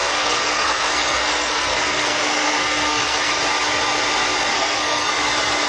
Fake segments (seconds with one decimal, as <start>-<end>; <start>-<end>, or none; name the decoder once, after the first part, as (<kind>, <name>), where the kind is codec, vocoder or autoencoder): 0.0-3.4 (codec, SNAC); 4.5-5.1